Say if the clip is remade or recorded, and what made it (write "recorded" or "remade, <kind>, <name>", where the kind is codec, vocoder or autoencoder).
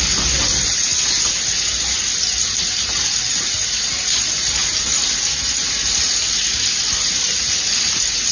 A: recorded